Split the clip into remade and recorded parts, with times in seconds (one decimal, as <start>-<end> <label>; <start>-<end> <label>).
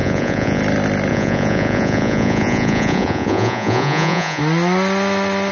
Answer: 0.0-0.6 remade; 0.6-1.1 recorded; 1.1-4.4 remade; 4.4-5.5 recorded